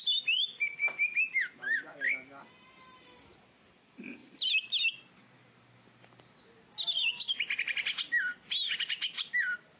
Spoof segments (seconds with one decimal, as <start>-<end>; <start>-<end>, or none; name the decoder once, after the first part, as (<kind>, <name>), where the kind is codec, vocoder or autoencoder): none